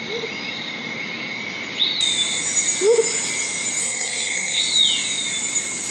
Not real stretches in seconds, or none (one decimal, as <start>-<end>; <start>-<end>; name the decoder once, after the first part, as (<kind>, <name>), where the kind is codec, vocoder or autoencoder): 3.8-4.6 (codec, SNAC)